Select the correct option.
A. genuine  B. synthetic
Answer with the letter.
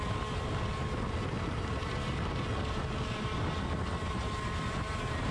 A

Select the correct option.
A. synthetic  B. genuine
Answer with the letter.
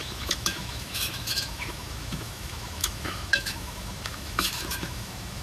A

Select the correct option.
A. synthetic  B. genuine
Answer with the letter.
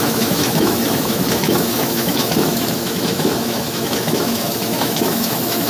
A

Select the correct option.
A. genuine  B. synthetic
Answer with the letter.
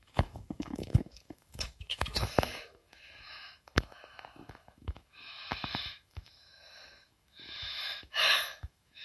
B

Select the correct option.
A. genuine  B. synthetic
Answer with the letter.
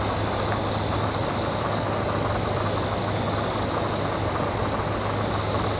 A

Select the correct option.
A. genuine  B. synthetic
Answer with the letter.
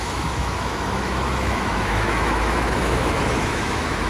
B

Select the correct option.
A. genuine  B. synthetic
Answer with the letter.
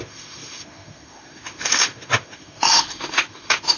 B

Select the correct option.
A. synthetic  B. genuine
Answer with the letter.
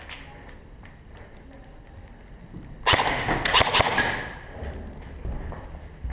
B